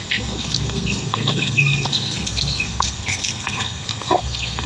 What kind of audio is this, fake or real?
fake